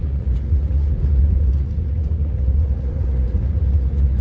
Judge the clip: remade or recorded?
remade